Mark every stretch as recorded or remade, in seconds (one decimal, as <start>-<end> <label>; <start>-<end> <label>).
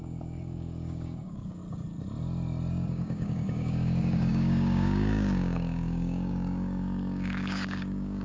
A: 0.0-1.6 remade; 1.6-2.7 recorded; 2.7-8.2 remade